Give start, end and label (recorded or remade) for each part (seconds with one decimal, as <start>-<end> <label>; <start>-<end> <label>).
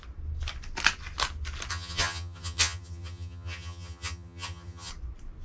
0.0-1.7 recorded; 1.7-4.9 remade; 4.9-5.4 recorded